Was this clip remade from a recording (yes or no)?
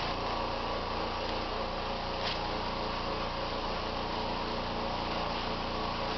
no